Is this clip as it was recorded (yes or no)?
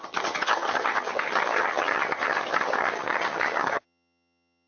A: no